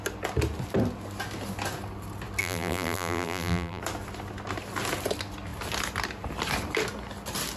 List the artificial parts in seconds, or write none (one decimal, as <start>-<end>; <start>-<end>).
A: 2.4-3.8

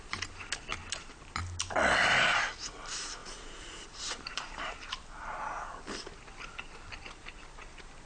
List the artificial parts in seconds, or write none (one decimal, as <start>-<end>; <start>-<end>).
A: 0.7-1.4; 3.2-4.6

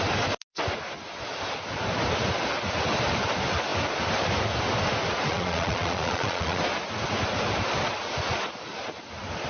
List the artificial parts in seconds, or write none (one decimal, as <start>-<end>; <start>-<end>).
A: 5.3-6.6

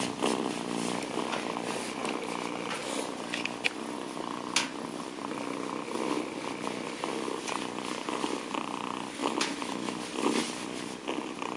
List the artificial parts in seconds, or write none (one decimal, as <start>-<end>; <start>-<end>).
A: 9.2-10.0

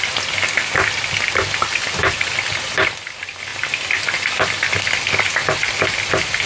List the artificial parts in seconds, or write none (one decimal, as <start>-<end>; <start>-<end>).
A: none

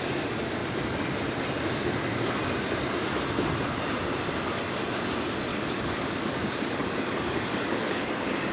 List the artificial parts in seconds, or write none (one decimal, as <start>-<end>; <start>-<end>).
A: 5.5-8.5

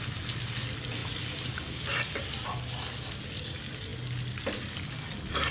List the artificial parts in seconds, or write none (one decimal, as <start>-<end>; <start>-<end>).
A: none

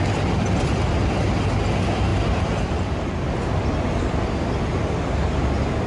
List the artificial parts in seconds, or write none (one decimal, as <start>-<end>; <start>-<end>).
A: none